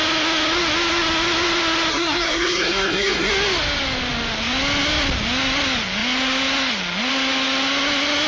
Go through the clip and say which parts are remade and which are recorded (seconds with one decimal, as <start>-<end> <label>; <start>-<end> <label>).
0.0-1.9 recorded; 1.9-3.3 remade; 3.3-8.3 recorded